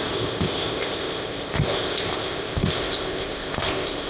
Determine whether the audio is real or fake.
fake